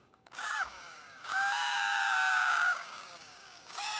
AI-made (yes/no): yes